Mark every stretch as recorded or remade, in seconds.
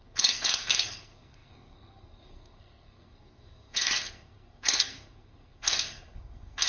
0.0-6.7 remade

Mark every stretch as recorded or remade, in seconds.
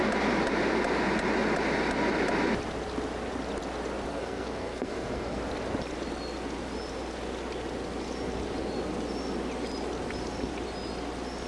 0.0-4.1 recorded; 4.1-5.4 remade; 5.4-11.5 recorded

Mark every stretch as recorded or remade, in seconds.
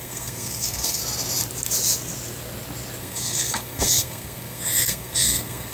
0.0-1.0 remade; 1.0-3.0 recorded; 3.0-5.7 remade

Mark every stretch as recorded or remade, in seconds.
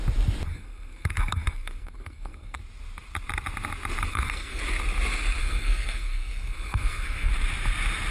0.0-0.5 recorded; 0.5-2.6 remade; 2.6-4.1 recorded; 4.1-4.6 remade; 4.6-5.4 recorded; 5.4-7.3 remade; 7.3-8.1 recorded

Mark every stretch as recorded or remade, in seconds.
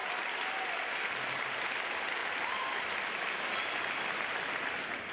0.0-5.1 recorded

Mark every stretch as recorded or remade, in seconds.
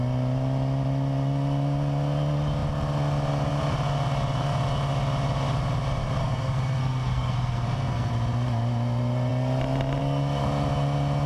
0.0-6.2 recorded; 6.2-8.1 remade; 8.1-11.3 recorded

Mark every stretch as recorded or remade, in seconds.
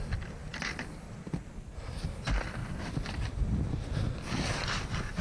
0.0-5.2 recorded